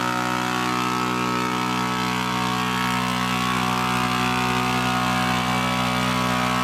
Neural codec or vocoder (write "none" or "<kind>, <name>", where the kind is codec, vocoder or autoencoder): none